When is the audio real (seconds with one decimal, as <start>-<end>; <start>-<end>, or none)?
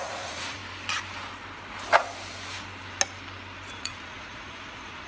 0.6-3.7